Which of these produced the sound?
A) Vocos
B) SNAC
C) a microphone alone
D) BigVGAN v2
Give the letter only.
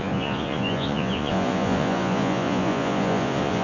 A